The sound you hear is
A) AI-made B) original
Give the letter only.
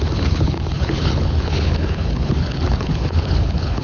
A